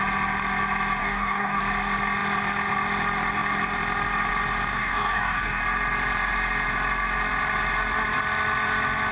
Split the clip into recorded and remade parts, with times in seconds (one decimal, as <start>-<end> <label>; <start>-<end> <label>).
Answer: 0.0-1.0 recorded; 1.0-1.6 remade; 1.6-4.7 recorded; 4.7-5.6 remade; 5.6-9.1 recorded